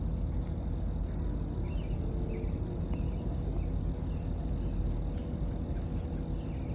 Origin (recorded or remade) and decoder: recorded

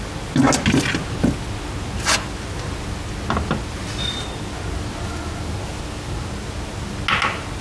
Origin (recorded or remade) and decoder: recorded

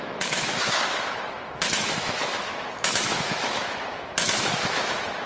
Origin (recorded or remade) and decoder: remade, autoencoder, DAC-VAE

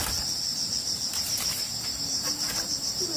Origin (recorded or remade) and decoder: recorded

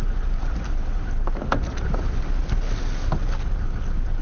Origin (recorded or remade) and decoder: recorded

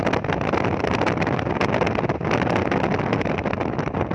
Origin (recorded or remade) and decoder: recorded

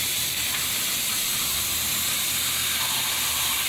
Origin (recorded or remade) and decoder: recorded